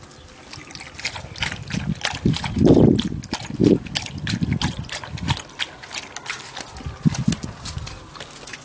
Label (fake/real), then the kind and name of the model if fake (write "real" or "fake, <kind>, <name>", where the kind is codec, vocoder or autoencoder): real